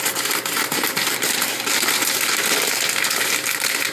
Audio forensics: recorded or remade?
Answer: recorded